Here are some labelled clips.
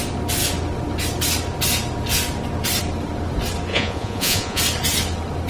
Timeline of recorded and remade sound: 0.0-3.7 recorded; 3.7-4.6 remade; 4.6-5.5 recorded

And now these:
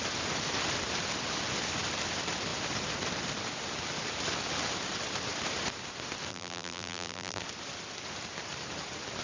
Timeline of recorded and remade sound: 0.0-6.3 recorded; 6.3-7.4 remade; 7.4-9.2 recorded